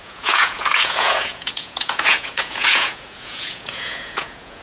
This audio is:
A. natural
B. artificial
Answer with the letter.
B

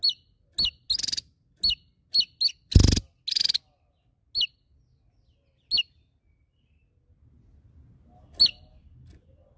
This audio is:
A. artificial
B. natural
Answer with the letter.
B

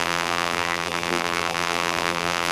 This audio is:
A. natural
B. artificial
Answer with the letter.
B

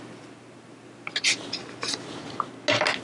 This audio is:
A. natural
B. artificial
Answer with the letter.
A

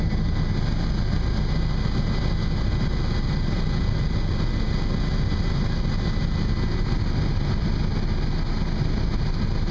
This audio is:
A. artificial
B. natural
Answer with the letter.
B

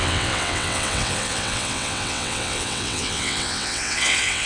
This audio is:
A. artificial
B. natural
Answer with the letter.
A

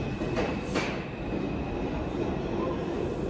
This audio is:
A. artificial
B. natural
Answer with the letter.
B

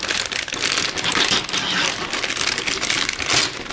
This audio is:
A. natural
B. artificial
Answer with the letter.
A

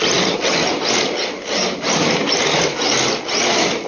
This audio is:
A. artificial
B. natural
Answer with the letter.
B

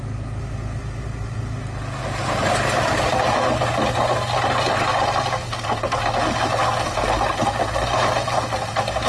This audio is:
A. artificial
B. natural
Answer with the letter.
B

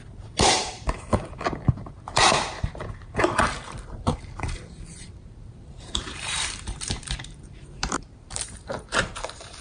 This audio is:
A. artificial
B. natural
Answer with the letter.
A